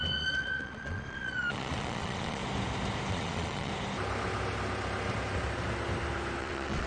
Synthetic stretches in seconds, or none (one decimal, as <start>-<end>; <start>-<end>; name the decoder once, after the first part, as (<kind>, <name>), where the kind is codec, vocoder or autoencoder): 0.0-2.4 (vocoder, Vocos); 3.1-3.7; 6.4-6.9